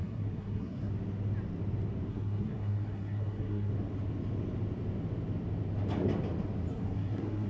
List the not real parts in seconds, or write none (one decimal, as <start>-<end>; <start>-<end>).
0.0-0.9; 2.1-3.7; 6.7-7.5